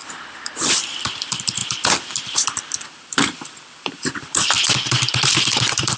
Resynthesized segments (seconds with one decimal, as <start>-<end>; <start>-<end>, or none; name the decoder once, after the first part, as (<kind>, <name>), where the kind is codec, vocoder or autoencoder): 1.0-6.0 (vocoder, BigVGAN v2)